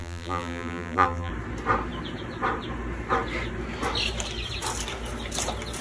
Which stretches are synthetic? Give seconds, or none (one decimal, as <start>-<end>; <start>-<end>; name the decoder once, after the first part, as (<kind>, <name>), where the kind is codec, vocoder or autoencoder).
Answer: 0.0-1.3 (vocoder, BigVGAN v2)